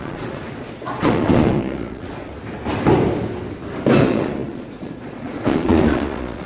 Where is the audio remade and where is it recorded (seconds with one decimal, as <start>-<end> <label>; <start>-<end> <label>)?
0.0-2.3 remade; 2.3-4.0 recorded; 4.0-6.5 remade